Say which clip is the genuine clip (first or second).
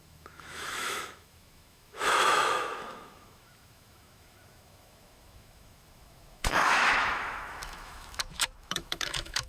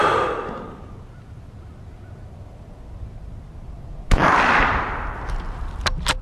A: second